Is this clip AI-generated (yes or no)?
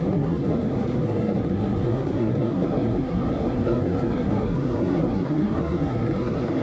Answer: yes